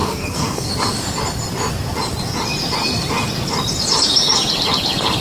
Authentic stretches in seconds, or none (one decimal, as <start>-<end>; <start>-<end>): 0.7-5.2